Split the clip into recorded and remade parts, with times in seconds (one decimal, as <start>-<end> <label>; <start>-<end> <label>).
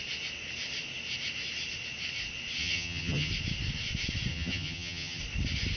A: 0.0-2.6 recorded; 2.6-3.3 remade; 3.3-4.3 recorded; 4.3-5.2 remade; 5.2-5.8 recorded